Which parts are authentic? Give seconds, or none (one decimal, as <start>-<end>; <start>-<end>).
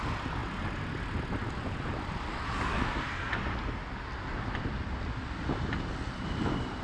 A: 0.0-2.7; 3.3-6.8